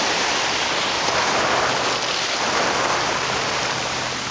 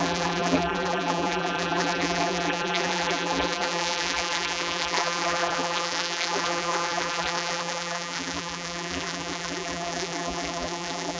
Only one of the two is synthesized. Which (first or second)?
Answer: second